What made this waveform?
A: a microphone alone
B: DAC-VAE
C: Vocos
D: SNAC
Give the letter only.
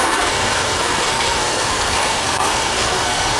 D